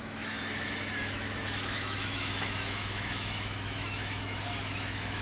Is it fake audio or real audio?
fake